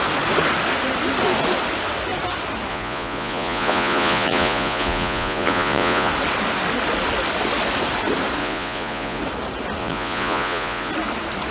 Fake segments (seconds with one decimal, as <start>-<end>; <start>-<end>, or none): 2.7-6.1; 8.4-9.2; 9.8-10.9